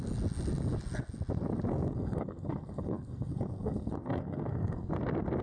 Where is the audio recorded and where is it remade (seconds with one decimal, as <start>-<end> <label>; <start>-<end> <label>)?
0.0-1.7 recorded; 1.7-4.9 remade; 4.9-5.4 recorded